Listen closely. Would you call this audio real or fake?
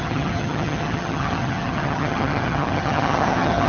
fake